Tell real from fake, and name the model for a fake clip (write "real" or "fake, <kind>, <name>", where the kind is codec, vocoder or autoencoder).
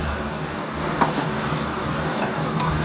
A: fake, codec, DAC